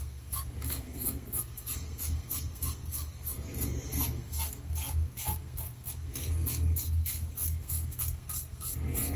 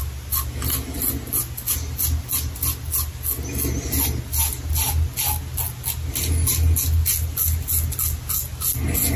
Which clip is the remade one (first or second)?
first